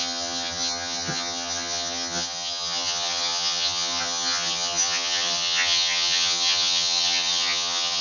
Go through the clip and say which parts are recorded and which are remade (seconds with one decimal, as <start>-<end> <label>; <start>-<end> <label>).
0.0-8.0 remade